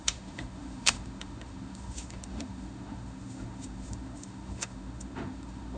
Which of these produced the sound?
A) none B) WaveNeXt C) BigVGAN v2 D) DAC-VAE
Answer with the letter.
D